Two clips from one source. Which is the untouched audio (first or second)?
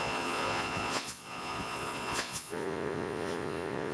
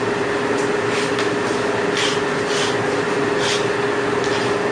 second